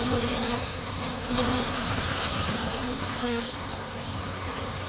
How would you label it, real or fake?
fake